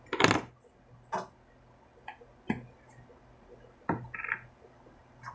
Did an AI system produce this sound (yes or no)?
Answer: no